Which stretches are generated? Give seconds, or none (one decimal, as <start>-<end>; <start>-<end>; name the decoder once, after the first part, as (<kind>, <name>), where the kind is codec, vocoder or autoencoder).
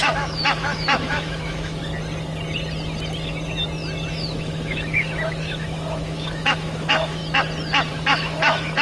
0.0-1.8 (autoencoder, DAC-VAE); 4.1-7.2; 7.9-8.8